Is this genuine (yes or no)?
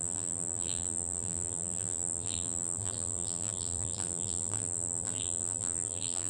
no